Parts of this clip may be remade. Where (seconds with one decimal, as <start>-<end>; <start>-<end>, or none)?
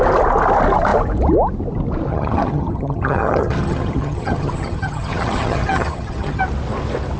2.1-6.4